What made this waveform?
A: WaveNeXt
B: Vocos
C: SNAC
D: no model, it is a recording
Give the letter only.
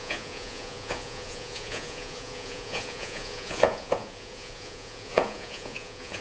B